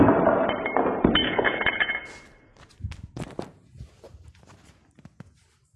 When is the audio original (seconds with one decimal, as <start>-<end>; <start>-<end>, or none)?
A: 0.0-1.2; 1.9-5.8